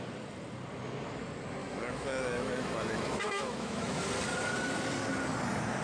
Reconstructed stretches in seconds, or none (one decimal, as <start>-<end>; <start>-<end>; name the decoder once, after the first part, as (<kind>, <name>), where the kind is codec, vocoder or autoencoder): 1.6-4.0 (autoencoder, DAC-VAE)